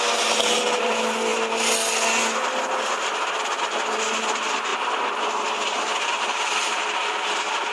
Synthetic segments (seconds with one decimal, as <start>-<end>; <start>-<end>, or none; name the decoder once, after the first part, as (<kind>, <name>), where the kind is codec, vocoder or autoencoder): 4.7-7.1 (vocoder, BigVGAN v2)